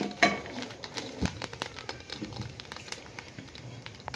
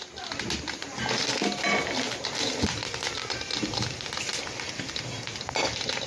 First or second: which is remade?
first